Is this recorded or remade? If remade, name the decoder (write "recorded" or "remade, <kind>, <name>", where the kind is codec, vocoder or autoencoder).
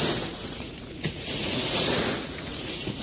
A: remade, vocoder, Vocos